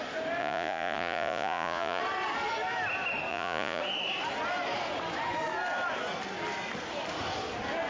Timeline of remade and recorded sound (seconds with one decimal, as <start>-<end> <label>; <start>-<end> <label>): 0.0-0.4 recorded; 0.4-2.0 remade; 2.0-3.3 recorded; 3.3-3.8 remade; 3.8-7.9 recorded